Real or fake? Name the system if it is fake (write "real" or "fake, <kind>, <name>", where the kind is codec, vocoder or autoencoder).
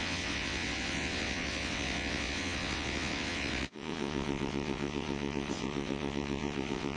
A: fake, vocoder, WaveNeXt